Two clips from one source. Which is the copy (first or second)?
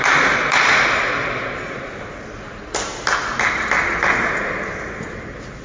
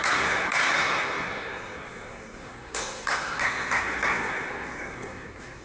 second